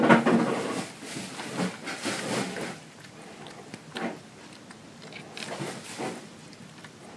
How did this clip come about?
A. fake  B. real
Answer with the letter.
B